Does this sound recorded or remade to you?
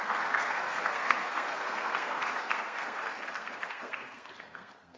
remade